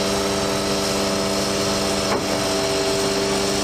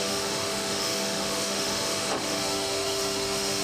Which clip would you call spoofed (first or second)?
second